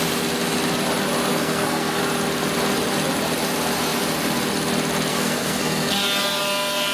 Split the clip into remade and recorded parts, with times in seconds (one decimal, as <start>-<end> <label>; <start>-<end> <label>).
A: 0.0-1.3 recorded; 1.3-2.0 remade; 2.0-5.1 recorded; 5.1-5.9 remade; 5.9-6.9 recorded